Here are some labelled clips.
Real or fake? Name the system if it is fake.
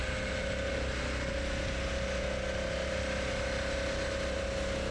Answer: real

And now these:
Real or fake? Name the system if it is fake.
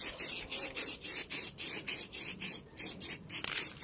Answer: real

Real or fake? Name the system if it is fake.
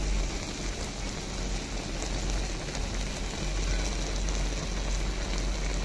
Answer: real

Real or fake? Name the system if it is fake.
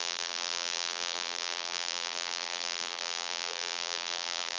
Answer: fake, vocoder, BigVGAN v2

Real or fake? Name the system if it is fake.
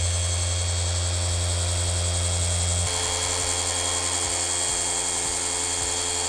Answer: real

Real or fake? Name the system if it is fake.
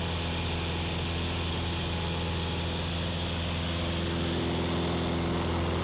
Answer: real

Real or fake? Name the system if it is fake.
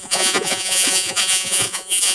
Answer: fake, vocoder, Vocos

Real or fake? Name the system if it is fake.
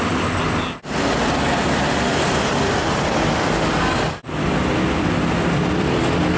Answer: real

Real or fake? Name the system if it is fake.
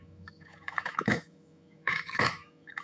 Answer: fake, autoencoder, DAC-VAE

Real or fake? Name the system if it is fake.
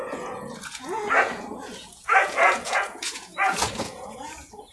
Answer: fake, vocoder, Vocos